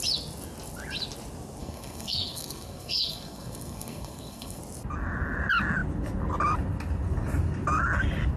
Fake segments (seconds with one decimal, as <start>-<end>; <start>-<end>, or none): 1.6-4.6